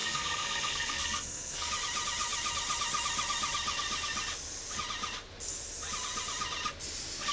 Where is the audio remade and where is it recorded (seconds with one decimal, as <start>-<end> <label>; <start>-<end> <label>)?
0.0-1.7 remade; 1.7-7.3 recorded